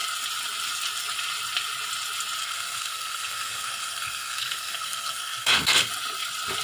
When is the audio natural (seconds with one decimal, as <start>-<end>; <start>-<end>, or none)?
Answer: 0.0-2.4; 5.9-6.6